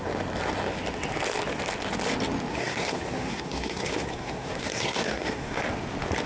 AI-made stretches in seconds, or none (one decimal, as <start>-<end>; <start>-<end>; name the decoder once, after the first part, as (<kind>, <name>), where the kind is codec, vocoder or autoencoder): 2.5-5.6 (codec, SNAC)